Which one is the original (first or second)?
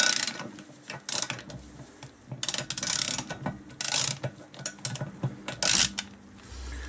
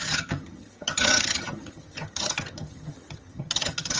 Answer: first